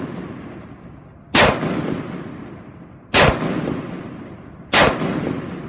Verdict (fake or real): real